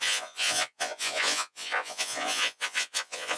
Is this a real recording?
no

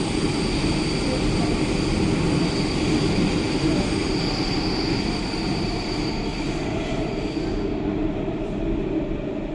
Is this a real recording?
yes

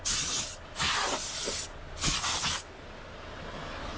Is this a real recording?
yes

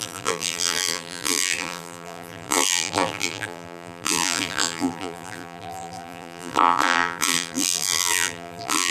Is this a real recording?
no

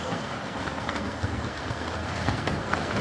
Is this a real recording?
no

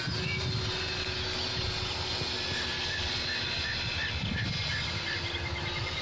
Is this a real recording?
yes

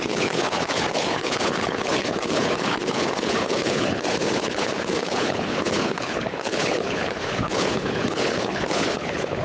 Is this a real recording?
no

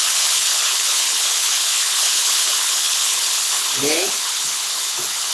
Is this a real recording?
no